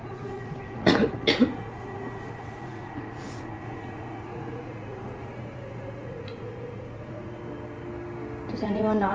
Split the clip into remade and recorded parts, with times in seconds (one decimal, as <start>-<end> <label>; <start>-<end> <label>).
0.0-7.4 remade; 7.4-8.5 recorded; 8.5-9.1 remade